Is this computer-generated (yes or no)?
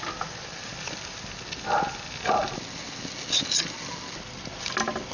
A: no